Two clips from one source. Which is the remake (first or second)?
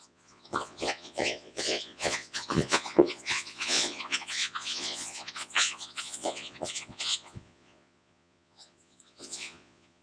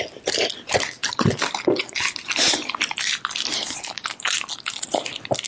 first